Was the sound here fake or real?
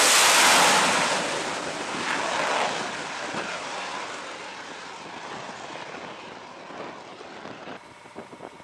real